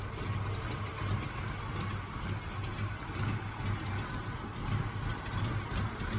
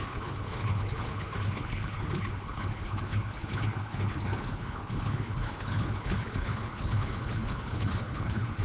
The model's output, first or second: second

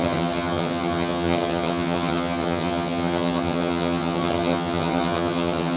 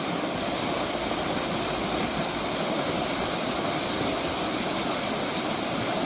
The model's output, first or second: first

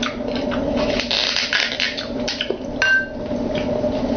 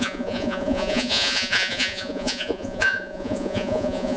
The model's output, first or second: second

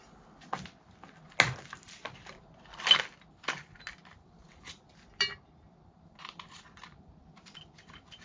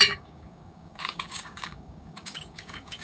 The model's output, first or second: second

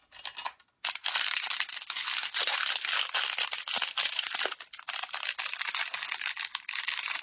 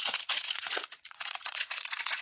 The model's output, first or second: second